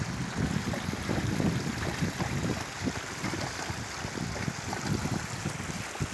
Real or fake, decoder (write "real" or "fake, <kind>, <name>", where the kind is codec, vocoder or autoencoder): real